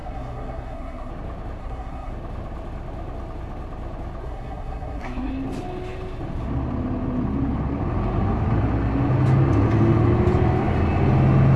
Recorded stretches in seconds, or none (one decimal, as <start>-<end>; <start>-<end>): 1.1-1.6; 2.1-4.2; 5.3-11.6